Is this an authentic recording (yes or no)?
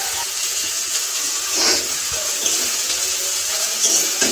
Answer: no